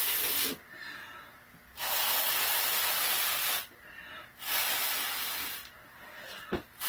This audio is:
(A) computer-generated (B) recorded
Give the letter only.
B